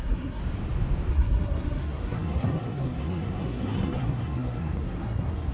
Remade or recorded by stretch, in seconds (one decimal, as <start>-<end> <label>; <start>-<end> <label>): 0.0-0.4 remade; 0.4-1.1 recorded; 1.1-5.5 remade